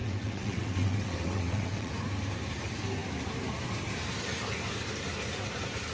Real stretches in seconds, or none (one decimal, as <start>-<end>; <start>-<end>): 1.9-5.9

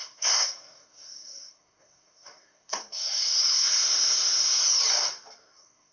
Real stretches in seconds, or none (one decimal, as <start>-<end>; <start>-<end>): 4.6-5.4

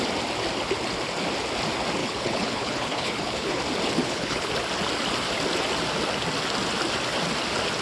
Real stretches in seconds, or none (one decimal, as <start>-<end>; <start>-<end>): 0.0-2.0; 3.6-4.0; 4.5-7.8

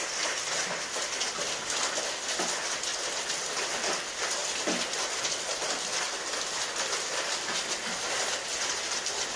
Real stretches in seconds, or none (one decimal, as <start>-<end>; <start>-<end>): 0.0-2.9; 4.0-4.4; 5.7-9.4

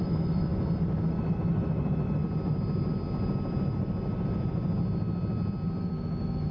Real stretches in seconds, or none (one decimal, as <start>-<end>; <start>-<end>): 0.5-1.1; 2.2-5.8